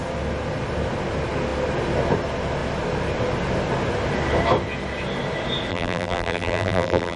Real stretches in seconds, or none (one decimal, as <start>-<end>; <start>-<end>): 0.0-5.7